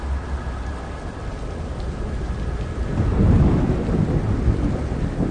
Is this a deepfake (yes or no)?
no